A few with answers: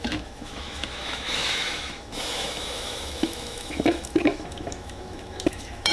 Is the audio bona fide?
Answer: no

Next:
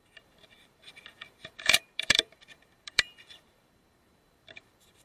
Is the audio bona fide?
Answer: no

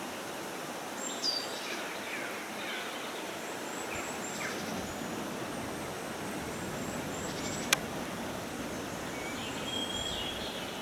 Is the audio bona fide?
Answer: yes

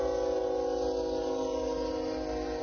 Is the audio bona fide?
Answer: yes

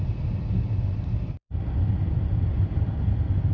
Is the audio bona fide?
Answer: yes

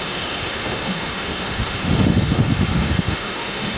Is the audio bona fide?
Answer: no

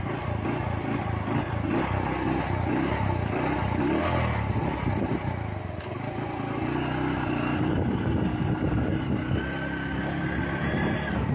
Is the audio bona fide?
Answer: yes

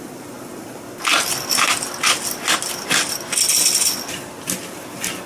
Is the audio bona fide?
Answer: yes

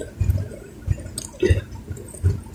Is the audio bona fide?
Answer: yes